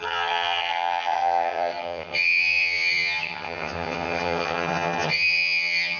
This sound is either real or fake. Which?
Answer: fake